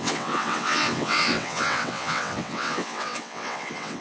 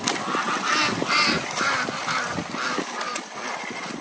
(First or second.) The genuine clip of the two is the second